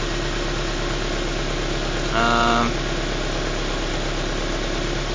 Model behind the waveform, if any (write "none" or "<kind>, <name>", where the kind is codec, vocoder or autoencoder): none